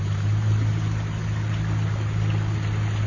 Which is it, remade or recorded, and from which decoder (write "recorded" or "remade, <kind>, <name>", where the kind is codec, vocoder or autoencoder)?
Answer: recorded